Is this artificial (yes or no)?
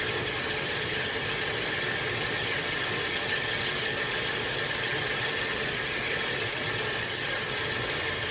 no